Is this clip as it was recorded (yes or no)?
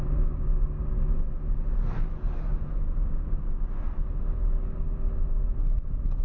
yes